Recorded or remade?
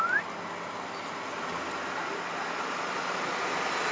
recorded